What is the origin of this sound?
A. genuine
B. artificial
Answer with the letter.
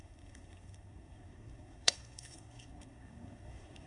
B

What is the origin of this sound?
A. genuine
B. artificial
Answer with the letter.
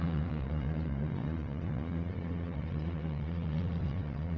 B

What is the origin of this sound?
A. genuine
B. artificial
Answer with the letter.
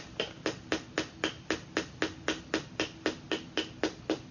A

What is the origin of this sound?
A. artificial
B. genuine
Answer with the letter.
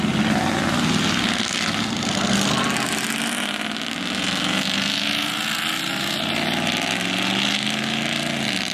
B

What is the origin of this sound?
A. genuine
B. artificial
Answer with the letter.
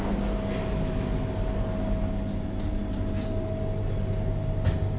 A